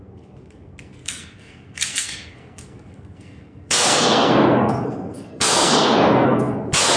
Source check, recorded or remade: remade